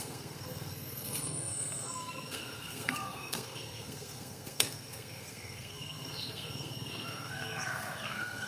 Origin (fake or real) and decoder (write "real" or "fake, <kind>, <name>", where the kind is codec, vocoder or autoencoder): fake, codec, SNAC